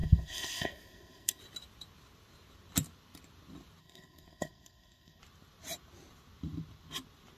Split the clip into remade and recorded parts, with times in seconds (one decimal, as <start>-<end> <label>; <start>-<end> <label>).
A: 0.0-1.4 remade; 1.4-3.8 recorded; 3.8-5.2 remade; 5.2-7.4 recorded